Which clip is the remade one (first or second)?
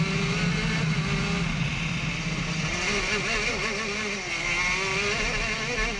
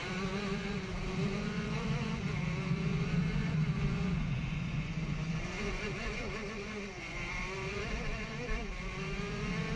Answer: second